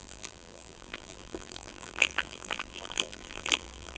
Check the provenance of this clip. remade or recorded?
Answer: remade